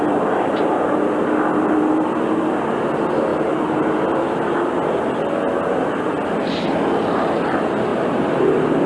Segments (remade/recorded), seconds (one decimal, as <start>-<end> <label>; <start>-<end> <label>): 0.0-3.3 recorded; 3.3-4.2 remade; 4.2-7.9 recorded; 7.9-8.9 remade